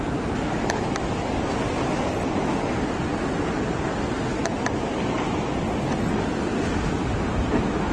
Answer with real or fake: real